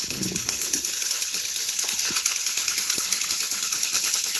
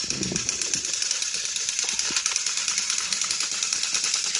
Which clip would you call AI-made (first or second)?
first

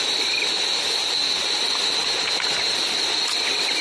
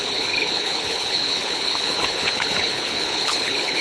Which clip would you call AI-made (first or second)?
second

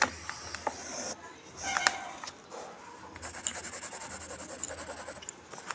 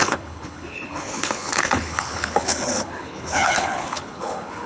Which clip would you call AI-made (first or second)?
second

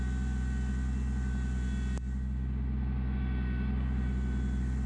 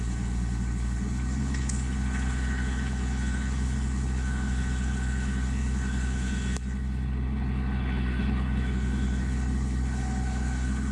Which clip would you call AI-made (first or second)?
second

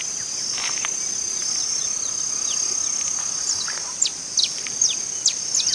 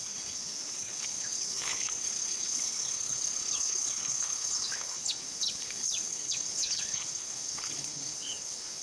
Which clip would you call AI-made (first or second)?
second